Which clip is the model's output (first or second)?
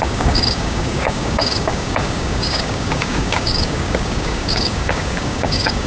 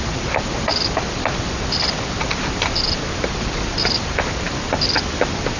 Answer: first